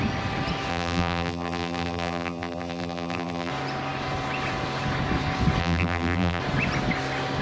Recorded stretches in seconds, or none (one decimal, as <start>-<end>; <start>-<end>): 0.0-0.7; 3.5-5.6; 6.4-7.4